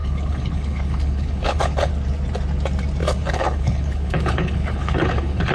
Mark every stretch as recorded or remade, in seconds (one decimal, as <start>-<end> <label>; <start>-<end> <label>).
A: 0.0-1.9 remade; 1.9-3.0 recorded; 3.0-5.5 remade